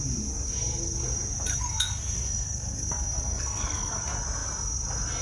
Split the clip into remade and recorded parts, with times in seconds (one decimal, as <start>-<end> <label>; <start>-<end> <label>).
0.0-1.5 recorded; 1.5-4.0 remade; 4.0-5.2 recorded